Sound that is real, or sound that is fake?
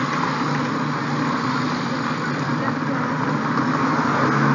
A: real